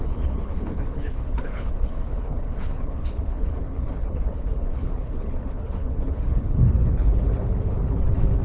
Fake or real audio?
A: fake